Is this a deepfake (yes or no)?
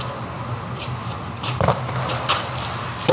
no